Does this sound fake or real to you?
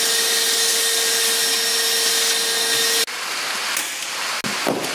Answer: real